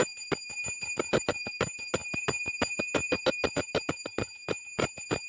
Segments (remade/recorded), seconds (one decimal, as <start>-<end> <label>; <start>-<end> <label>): 0.0-5.3 recorded